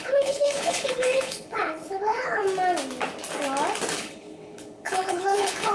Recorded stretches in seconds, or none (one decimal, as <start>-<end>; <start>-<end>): 2.4-3.9